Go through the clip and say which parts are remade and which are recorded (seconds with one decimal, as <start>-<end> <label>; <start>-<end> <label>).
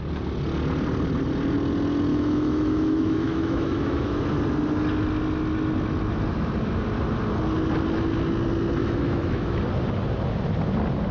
0.0-2.1 recorded; 2.1-4.2 remade; 4.2-8.8 recorded; 8.8-9.6 remade; 9.6-11.1 recorded